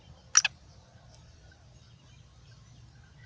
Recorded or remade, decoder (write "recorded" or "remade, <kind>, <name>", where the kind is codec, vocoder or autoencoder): recorded